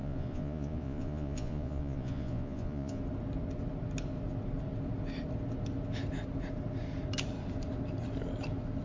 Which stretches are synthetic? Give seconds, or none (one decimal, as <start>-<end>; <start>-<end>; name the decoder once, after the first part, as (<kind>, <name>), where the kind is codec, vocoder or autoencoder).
0.0-3.0 (vocoder, Vocos)